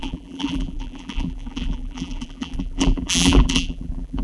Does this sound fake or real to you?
fake